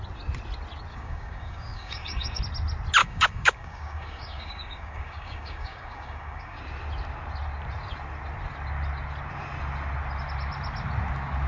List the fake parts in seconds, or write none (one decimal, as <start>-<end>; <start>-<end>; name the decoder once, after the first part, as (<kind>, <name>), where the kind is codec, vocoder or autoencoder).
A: 0.9-2.4 (codec, DAC); 3.0-6.6